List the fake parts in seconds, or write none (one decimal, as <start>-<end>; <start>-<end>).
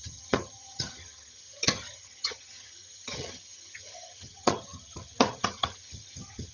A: 0.0-6.5